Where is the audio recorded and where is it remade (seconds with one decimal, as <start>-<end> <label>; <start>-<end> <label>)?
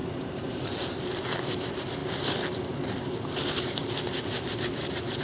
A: 0.0-0.7 remade; 0.7-5.2 recorded